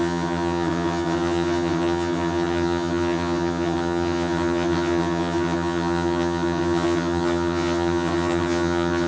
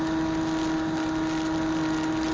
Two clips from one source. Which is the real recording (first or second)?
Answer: second